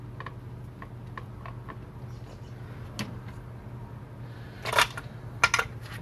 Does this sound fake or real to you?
real